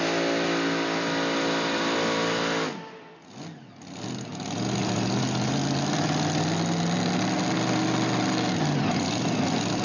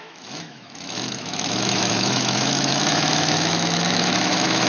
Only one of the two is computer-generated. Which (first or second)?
second